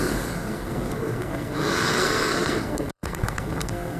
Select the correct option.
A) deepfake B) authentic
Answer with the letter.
A